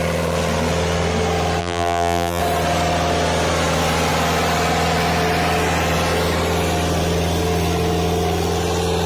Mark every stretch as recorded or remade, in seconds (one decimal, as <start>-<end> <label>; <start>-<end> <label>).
0.0-1.6 recorded; 1.6-2.4 remade; 2.4-9.1 recorded